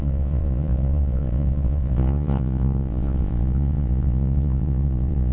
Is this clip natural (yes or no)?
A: no